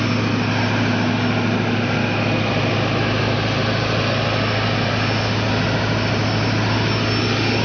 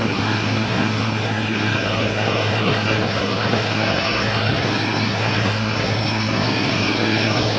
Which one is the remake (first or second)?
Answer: second